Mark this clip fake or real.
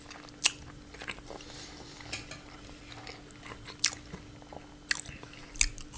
real